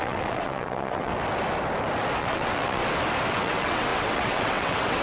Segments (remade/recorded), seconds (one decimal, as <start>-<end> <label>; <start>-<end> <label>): 0.0-1.1 remade; 1.1-2.2 recorded; 2.2-2.8 remade; 2.8-3.3 recorded; 3.3-5.0 remade